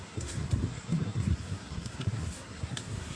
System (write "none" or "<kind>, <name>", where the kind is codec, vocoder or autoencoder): codec, SNAC